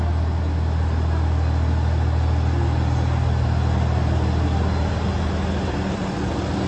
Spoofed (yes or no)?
no